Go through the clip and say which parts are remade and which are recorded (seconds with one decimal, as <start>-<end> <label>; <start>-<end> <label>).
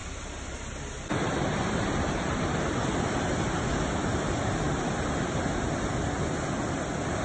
0.0-7.2 recorded